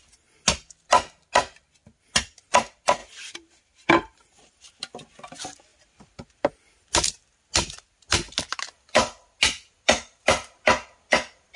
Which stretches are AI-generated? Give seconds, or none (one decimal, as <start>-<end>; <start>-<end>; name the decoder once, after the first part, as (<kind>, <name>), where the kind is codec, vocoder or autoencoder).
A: 3.0-4.7 (vocoder, BigVGAN v2); 5.7-6.5

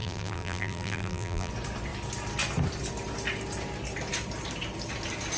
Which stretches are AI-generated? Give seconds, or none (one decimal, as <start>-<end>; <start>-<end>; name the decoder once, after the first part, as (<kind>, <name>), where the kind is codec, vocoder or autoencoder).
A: 0.0-1.5 (vocoder, BigVGAN v2)

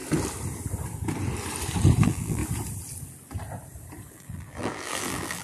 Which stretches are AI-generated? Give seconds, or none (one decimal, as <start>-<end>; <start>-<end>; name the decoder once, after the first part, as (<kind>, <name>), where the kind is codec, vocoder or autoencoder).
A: 2.0-2.4 (vocoder, BigVGAN v2); 4.1-5.4

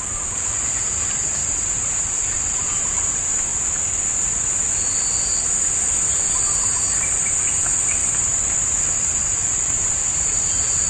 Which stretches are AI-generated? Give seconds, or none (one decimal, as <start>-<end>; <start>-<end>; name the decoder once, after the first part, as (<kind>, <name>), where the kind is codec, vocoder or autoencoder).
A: 0.0-3.5 (vocoder, BigVGAN v2); 7.4-10.9

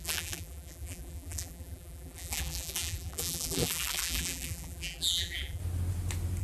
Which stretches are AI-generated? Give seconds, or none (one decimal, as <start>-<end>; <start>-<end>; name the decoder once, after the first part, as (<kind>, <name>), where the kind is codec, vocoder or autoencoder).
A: 0.0-5.6 (vocoder, BigVGAN v2)

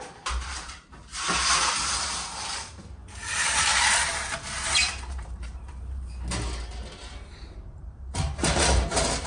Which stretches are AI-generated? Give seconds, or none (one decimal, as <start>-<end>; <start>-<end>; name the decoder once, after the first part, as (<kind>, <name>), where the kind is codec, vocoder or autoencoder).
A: 0.0-1.1 (vocoder, BigVGAN v2); 1.7-3.0; 4.7-9.3

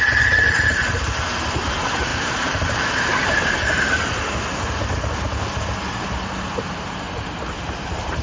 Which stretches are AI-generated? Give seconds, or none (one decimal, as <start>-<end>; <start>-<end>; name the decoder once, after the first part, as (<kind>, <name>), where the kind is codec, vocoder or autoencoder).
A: 2.1-3.3 (vocoder, BigVGAN v2); 5.9-7.4